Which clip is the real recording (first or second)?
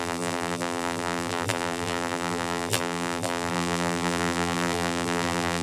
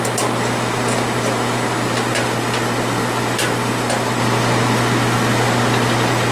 second